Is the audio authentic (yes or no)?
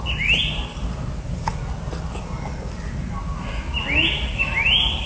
yes